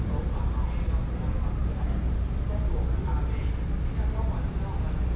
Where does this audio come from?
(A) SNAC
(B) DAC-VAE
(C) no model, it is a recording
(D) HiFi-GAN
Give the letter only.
C